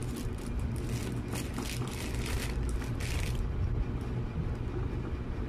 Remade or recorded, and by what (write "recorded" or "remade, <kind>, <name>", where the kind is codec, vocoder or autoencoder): recorded